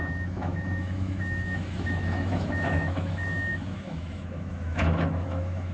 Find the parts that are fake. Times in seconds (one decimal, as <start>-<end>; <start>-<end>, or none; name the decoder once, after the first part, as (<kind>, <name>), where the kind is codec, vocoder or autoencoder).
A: 0.0-5.7 (autoencoder, DAC-VAE)